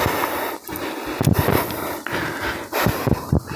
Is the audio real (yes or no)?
yes